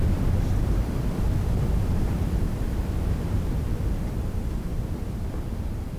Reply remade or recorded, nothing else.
remade